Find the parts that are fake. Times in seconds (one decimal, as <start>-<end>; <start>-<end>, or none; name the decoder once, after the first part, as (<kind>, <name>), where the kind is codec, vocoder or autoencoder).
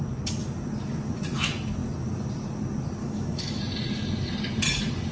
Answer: 3.0-3.6 (autoencoder, DAC-VAE)